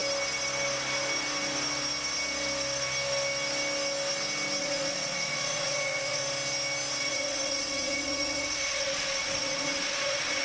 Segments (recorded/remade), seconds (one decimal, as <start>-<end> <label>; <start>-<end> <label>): 0.0-4.6 recorded; 4.6-6.2 remade; 6.2-7.0 recorded; 7.0-10.4 remade